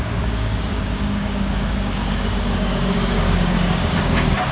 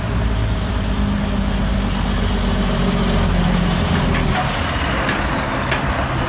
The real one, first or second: second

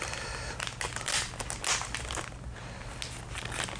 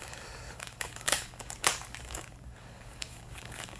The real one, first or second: first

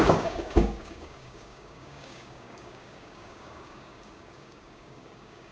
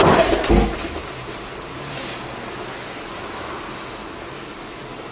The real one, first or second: second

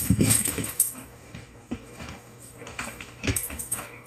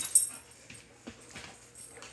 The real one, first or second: second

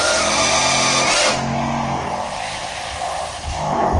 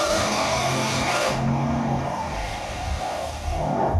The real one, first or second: first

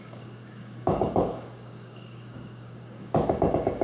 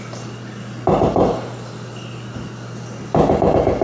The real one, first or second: second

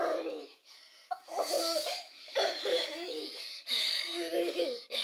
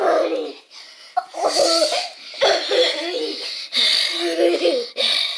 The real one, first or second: second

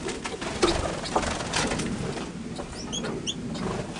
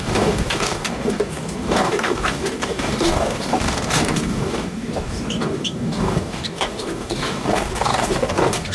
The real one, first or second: first